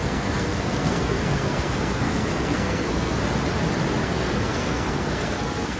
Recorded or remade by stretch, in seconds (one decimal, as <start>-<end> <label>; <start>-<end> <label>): 0.0-3.2 remade; 3.2-4.0 recorded; 4.0-5.8 remade